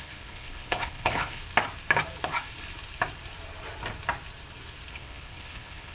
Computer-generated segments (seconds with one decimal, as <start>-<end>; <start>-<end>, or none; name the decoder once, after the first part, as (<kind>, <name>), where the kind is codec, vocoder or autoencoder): 0.0-1.4 (codec, HILCodec); 4.9-5.9